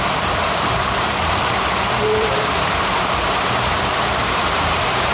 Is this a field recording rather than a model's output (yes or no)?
no